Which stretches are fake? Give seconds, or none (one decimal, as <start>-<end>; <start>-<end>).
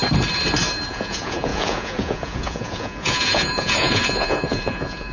0.9-5.1